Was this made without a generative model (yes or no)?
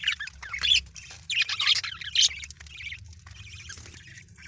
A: yes